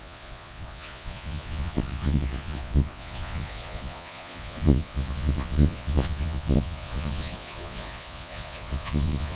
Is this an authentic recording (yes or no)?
no